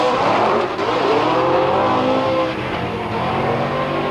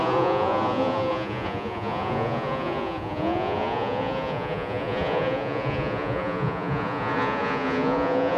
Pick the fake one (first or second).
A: second